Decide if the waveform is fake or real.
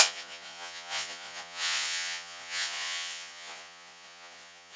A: fake